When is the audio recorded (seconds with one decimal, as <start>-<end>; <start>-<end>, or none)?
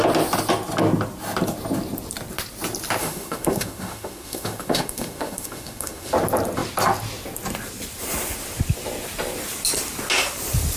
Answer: 0.0-3.0; 6.1-10.8